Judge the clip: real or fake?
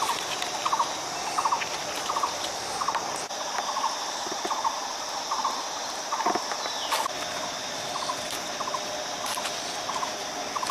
real